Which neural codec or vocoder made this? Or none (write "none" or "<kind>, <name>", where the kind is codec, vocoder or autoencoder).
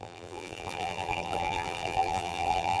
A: vocoder, BigVGAN v2